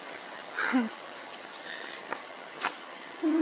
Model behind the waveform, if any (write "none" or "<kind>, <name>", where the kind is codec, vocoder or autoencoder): vocoder, HiFi-GAN